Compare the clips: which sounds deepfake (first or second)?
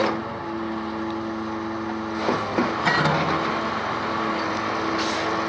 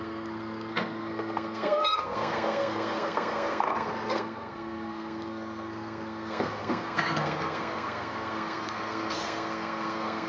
second